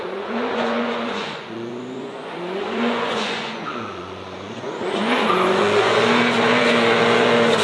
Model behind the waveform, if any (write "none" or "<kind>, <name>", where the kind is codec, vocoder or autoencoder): vocoder, Vocos